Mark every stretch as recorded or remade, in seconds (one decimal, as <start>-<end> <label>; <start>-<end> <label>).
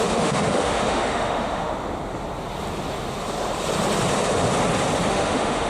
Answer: 0.0-1.7 remade; 1.7-5.1 recorded; 5.1-5.7 remade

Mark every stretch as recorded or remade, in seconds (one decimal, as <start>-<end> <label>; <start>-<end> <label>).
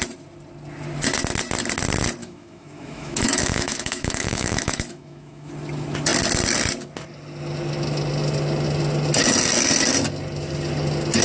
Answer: 0.0-2.2 recorded; 2.2-5.5 remade; 5.5-11.2 recorded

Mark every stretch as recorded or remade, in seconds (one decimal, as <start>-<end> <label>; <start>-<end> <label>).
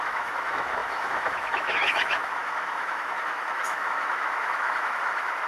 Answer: 0.0-5.5 remade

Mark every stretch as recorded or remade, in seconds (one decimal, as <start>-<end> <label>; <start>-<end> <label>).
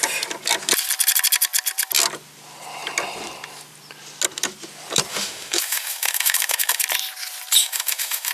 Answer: 0.0-5.1 recorded; 5.1-6.8 remade; 6.8-7.6 recorded; 7.6-8.3 remade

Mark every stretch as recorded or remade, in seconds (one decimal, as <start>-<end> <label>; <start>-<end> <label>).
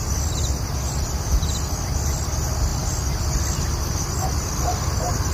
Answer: 0.0-5.3 recorded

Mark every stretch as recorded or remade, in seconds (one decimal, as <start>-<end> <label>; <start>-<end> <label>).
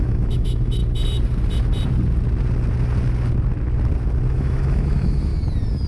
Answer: 0.0-0.8 remade; 0.8-4.3 recorded; 4.3-5.3 remade; 5.3-5.9 recorded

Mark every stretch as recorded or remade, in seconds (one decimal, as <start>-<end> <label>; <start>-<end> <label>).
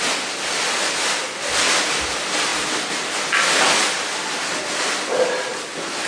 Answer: 0.0-6.1 recorded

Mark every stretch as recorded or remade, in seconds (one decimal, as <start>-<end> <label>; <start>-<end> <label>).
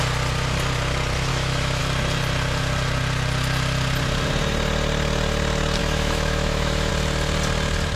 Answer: 0.0-1.3 recorded; 1.3-1.8 remade; 1.8-5.8 recorded; 5.8-6.9 remade; 6.9-8.0 recorded